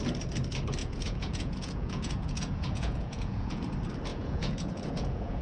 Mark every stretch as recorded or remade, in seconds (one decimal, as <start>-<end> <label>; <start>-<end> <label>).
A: 0.0-0.8 recorded; 0.8-3.6 remade; 3.6-4.1 recorded; 4.1-5.4 remade